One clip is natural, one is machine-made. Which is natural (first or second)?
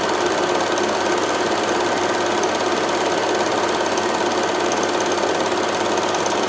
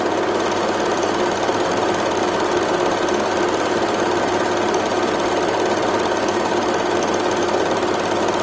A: second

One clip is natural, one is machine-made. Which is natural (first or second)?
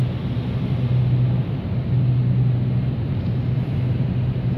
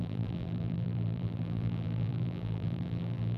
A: first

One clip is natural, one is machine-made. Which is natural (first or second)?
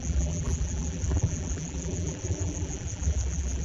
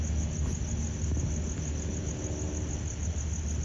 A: second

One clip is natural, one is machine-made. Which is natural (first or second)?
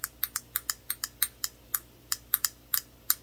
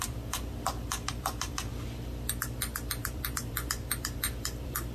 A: first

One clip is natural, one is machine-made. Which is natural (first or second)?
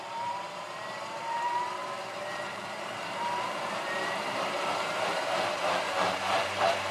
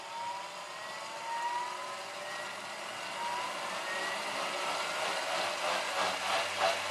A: second